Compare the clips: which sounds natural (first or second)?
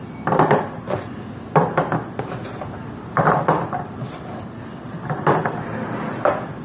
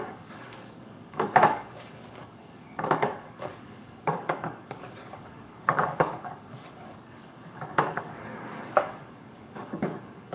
first